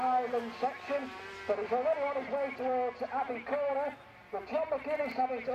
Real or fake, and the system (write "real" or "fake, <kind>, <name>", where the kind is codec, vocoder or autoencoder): real